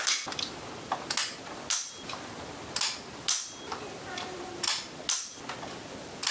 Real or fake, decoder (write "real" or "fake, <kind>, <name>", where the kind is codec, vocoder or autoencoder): real